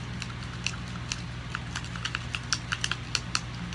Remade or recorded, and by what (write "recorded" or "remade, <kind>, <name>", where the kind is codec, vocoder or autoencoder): recorded